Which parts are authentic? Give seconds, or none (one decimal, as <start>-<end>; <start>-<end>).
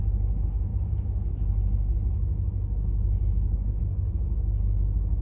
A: 0.0-0.7; 3.8-5.2